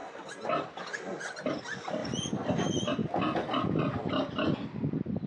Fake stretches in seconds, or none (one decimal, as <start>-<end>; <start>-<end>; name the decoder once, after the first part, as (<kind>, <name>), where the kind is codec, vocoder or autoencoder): none